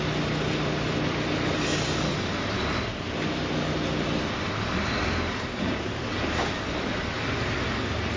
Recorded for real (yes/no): yes